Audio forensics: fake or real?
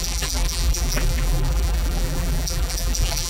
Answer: fake